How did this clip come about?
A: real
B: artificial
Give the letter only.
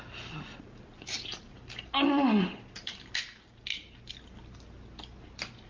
A